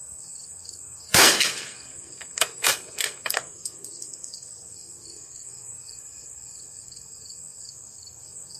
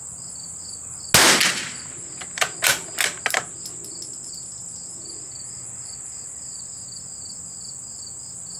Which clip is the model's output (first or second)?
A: first